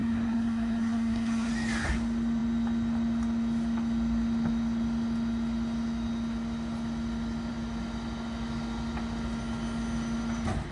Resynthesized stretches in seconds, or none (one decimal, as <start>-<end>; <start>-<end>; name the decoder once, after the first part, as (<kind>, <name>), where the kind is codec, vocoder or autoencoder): 0.0-1.5 (codec, SNAC)